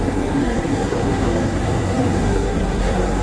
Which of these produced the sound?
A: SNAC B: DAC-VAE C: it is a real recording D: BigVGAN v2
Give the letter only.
A